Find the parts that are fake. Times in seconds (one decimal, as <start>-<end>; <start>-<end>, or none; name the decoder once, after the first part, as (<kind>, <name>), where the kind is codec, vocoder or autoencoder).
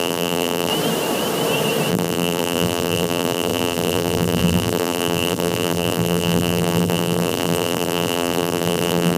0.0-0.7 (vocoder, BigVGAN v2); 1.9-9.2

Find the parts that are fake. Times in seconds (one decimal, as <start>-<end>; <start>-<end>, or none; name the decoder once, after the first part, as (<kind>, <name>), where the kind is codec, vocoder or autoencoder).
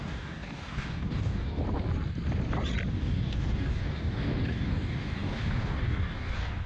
0.0-1.6 (codec, DAC); 2.9-6.7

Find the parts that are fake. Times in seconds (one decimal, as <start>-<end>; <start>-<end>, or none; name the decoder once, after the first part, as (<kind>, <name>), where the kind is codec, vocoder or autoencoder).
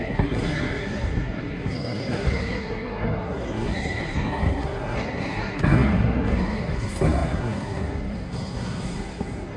0.0-9.6 (codec, SNAC)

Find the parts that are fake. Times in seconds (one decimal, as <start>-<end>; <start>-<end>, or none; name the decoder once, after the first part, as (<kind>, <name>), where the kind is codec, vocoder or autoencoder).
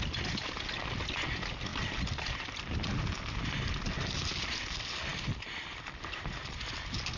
none